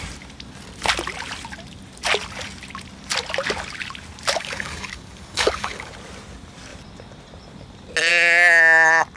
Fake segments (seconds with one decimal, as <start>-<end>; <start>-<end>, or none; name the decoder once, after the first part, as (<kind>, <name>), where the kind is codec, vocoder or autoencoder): 4.4-5.9 (codec, DAC)